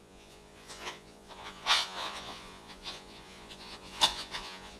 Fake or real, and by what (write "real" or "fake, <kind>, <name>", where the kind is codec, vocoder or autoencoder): fake, vocoder, Vocos